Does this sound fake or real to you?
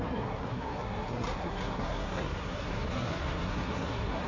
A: fake